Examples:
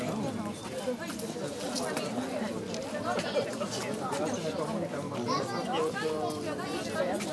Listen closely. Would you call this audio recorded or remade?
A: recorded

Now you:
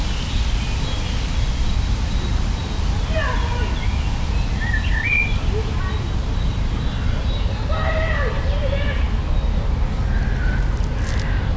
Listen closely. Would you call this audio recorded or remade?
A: recorded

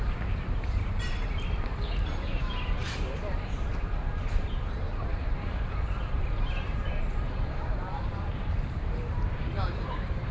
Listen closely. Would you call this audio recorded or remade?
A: remade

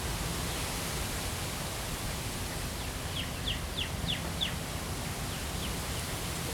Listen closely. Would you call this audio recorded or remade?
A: recorded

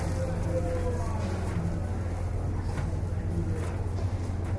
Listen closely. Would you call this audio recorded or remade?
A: recorded